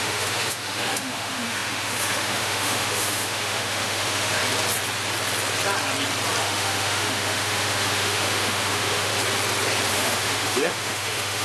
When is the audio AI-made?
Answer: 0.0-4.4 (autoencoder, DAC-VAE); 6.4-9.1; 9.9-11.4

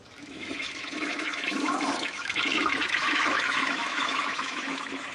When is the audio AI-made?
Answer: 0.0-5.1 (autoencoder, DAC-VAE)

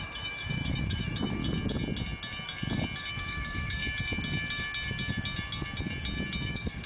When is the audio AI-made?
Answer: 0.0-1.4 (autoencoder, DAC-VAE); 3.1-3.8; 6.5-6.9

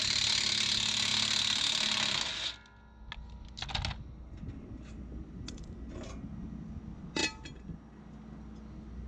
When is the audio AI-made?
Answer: none

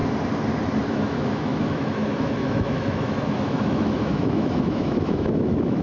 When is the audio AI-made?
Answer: 0.8-5.8 (autoencoder, DAC-VAE)

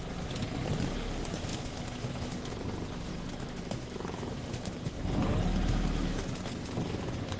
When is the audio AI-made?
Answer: 1.5-2.5 (autoencoder, DAC-VAE); 3.1-5.0; 5.5-6.3

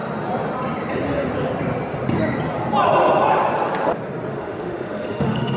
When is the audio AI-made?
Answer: 4.3-5.6 (autoencoder, DAC-VAE)

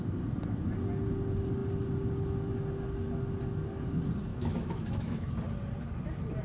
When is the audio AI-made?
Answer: 4.3-5.3 (autoencoder, DAC-VAE)